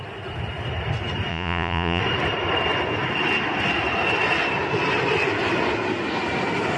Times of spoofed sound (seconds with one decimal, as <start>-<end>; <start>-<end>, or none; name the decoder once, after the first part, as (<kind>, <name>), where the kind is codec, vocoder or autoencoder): 1.3-2.0 (vocoder, Vocos)